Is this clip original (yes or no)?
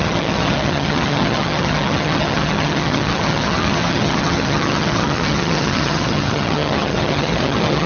no